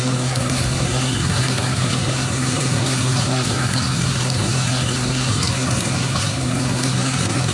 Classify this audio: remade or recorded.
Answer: remade